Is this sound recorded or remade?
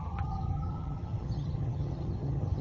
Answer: remade